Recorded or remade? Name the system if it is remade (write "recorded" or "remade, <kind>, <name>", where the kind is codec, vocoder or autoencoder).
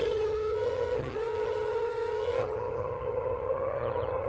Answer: remade, vocoder, HiFi-GAN